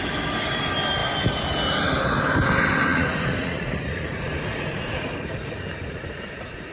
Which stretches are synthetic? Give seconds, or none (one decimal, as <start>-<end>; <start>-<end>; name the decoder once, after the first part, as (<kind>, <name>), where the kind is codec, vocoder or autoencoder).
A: 2.9-6.7 (vocoder, Vocos)